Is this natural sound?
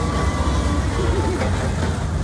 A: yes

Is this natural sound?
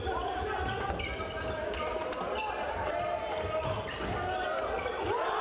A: yes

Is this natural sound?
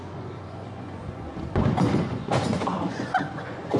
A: no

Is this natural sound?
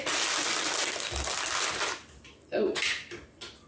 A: yes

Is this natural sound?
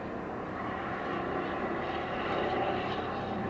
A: yes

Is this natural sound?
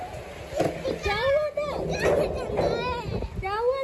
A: yes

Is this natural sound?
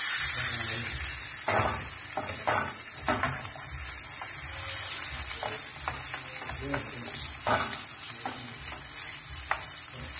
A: yes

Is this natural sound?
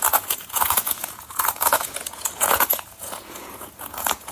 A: no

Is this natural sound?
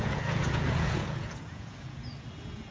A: no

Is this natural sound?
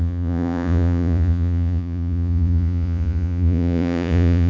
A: no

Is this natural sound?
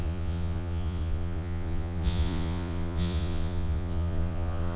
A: no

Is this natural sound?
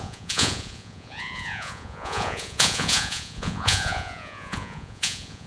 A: no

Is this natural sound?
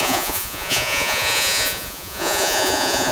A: no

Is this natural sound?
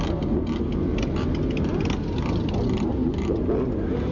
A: yes